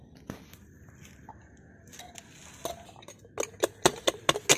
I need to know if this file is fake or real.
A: real